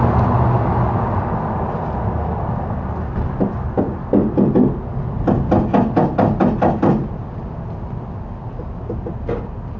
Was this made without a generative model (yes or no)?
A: yes